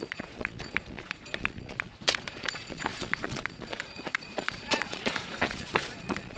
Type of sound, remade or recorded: remade